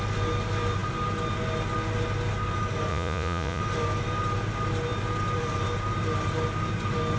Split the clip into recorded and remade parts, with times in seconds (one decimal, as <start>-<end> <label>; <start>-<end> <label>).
0.0-2.9 recorded; 2.9-3.6 remade; 3.6-7.2 recorded